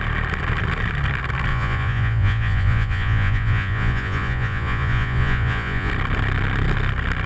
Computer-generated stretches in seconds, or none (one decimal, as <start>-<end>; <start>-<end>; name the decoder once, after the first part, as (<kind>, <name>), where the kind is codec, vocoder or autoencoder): 1.5-5.9 (vocoder, Vocos)